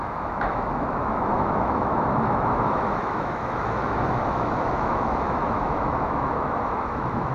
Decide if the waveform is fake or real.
fake